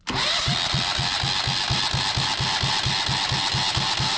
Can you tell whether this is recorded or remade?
recorded